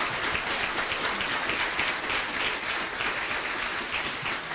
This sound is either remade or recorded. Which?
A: recorded